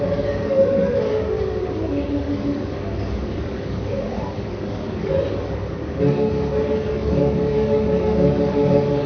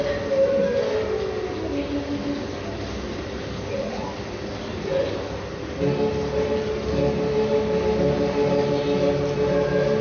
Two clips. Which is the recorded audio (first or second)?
second